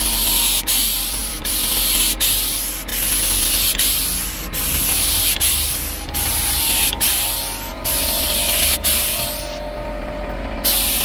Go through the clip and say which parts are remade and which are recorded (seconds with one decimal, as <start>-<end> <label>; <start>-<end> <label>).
0.0-1.2 recorded; 1.2-2.0 remade; 2.0-7.7 recorded; 7.7-8.3 remade; 8.3-11.0 recorded